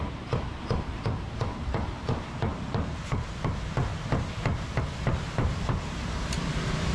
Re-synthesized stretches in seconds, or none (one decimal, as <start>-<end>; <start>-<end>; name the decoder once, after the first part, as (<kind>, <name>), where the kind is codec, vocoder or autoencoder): 0.0-3.9 (vocoder, BigVGAN v2); 4.8-6.9